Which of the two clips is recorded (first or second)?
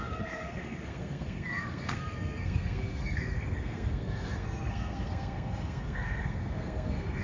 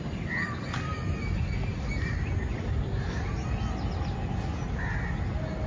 second